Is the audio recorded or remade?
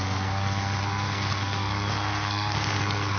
remade